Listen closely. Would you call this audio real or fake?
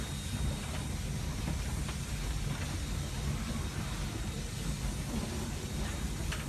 real